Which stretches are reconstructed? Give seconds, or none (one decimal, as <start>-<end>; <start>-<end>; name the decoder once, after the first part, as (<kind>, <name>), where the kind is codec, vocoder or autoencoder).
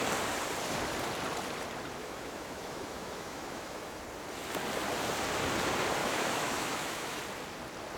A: 2.0-4.0 (autoencoder, DAC-VAE); 6.0-7.2